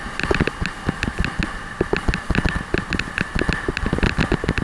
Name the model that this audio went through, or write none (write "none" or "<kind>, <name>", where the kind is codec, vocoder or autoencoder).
none